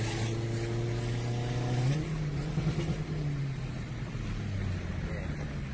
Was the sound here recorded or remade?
recorded